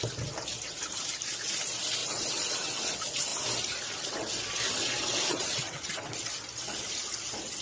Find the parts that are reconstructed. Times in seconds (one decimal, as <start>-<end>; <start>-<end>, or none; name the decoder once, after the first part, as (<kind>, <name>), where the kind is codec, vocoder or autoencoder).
2.0-2.9 (vocoder, WaveNeXt); 5.3-5.9